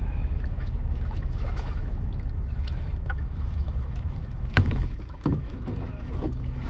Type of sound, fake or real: fake